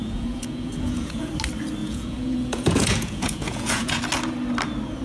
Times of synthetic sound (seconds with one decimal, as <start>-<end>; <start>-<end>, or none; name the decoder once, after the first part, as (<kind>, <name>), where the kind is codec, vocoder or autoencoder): 0.0-1.3 (vocoder, Vocos); 1.8-4.0